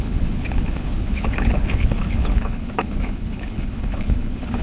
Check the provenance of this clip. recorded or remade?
remade